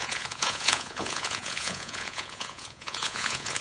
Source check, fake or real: fake